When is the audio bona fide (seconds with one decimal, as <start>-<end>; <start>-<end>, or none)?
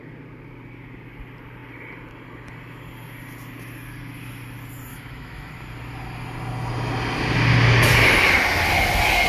0.0-4.9; 5.5-9.3